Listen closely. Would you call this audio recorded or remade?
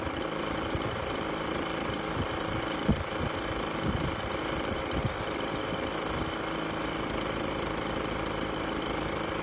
recorded